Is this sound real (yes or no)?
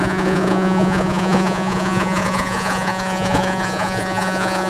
no